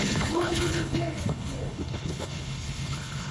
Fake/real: fake